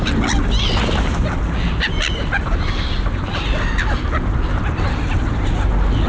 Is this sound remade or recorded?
recorded